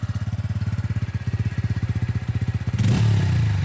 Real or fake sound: real